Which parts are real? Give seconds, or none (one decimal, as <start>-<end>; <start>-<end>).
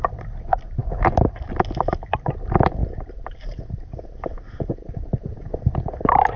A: 0.0-0.8; 1.5-2.8; 5.2-6.4